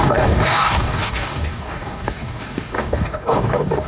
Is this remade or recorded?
remade